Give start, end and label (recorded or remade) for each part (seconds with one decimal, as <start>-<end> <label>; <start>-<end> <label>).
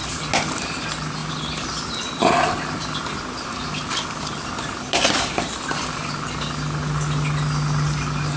0.0-8.4 recorded